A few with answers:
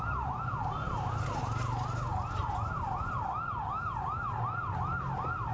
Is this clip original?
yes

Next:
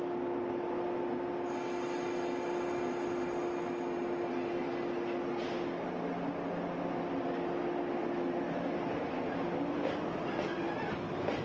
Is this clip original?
yes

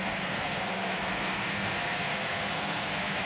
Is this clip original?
no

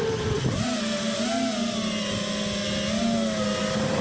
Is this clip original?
yes